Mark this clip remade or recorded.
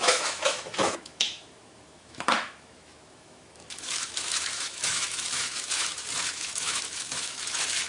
remade